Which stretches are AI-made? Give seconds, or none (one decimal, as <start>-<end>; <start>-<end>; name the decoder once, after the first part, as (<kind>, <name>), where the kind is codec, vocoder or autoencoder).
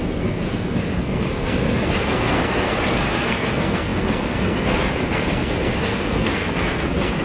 0.0-7.2 (codec, SNAC)